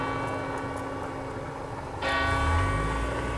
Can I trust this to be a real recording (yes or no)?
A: yes